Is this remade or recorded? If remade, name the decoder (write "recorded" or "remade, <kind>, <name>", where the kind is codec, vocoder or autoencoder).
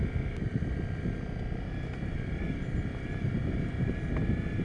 recorded